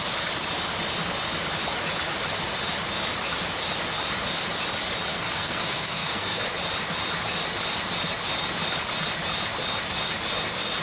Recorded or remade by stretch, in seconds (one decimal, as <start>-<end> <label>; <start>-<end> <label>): 0.0-5.1 recorded; 5.1-6.4 remade; 6.4-10.8 recorded

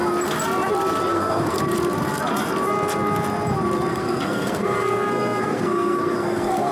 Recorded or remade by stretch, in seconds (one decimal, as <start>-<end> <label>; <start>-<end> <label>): 0.0-1.1 recorded; 1.1-1.6 remade; 1.6-3.9 recorded; 3.9-6.7 remade

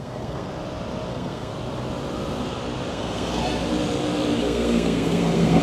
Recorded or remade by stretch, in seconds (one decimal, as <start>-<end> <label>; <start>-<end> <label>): 0.0-0.5 remade; 0.5-1.1 recorded; 1.1-1.5 remade; 1.5-2.9 recorded; 2.9-3.4 remade; 3.4-4.4 recorded; 4.4-5.6 remade

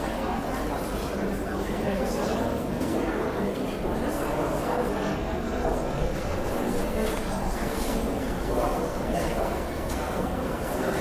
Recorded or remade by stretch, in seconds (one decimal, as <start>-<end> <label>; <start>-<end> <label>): 0.0-0.5 remade; 0.5-1.4 recorded; 1.4-3.6 remade; 3.6-4.1 recorded; 4.1-11.0 remade

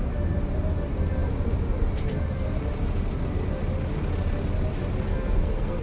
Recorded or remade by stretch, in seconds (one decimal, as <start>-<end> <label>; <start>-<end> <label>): 0.0-5.1 recorded; 5.1-5.8 remade

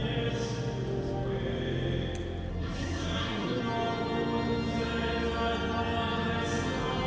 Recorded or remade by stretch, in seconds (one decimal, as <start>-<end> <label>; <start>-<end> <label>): 0.0-2.5 recorded; 2.5-3.6 remade; 3.6-7.1 recorded

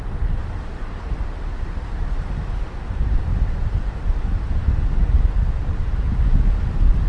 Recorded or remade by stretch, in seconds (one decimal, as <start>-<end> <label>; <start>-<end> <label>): 0.0-7.1 recorded